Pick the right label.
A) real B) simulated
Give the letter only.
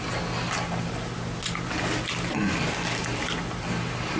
A